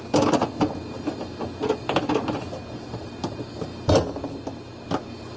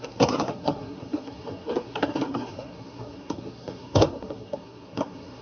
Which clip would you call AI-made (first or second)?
second